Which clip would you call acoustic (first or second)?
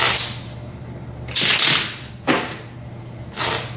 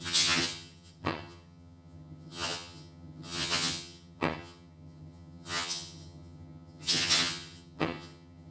first